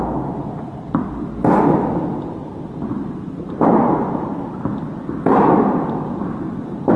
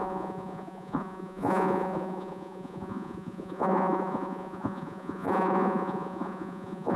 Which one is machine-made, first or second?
second